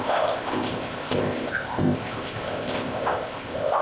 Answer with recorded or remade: remade